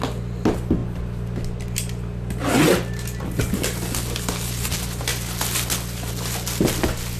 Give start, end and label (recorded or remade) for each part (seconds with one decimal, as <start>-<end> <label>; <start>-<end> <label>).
0.0-7.2 recorded